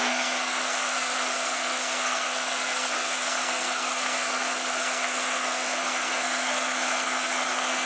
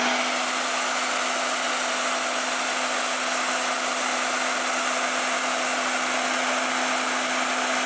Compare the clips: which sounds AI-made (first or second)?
first